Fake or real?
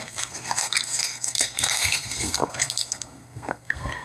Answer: fake